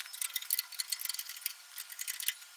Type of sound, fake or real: real